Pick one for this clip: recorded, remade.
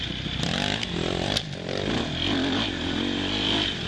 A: recorded